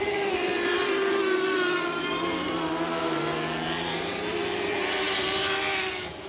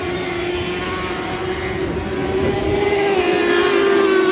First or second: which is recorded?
second